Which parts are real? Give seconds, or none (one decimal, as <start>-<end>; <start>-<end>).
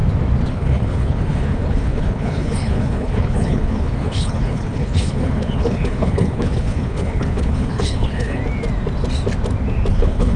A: 0.0-0.5; 8.4-9.9